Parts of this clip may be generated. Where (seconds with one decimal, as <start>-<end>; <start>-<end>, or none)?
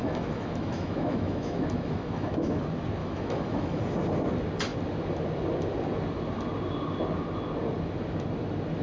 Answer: 0.0-2.6; 3.0-3.8